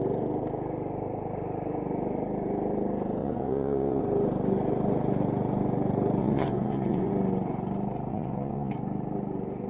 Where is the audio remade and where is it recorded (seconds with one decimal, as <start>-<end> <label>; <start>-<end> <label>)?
0.0-3.2 recorded; 3.2-4.0 remade; 4.0-6.2 recorded; 6.2-7.1 remade; 7.1-8.1 recorded; 8.1-8.7 remade; 8.7-9.7 recorded